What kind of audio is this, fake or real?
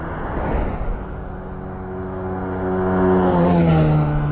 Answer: real